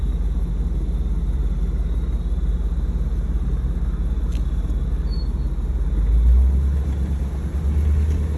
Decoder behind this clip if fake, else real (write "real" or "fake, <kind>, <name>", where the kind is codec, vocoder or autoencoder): real